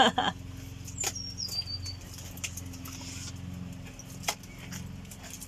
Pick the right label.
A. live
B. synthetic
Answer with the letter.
A